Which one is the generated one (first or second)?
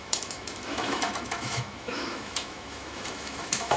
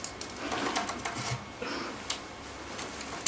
first